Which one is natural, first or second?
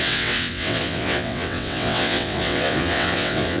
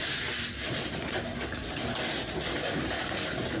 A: second